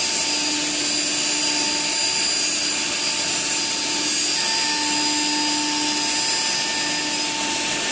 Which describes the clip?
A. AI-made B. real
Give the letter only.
B